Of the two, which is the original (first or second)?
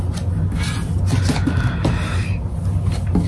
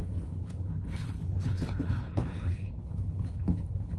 first